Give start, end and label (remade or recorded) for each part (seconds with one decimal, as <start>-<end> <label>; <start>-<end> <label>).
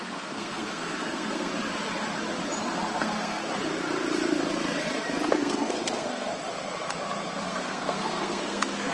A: 0.0-1.5 remade; 1.5-3.0 recorded; 3.0-3.4 remade; 3.4-5.3 recorded; 5.3-6.3 remade; 6.3-7.4 recorded; 7.4-8.9 remade